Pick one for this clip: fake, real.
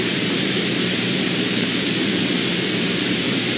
fake